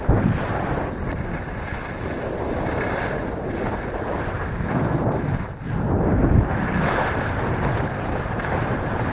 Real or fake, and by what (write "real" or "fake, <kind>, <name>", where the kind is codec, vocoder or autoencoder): real